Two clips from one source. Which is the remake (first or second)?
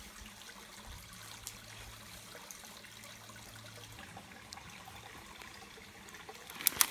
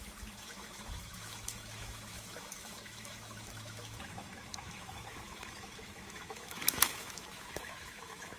second